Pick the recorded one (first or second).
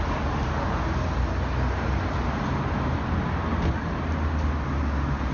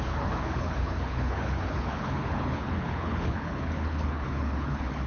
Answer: first